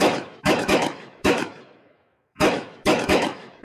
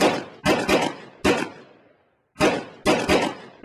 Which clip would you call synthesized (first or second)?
first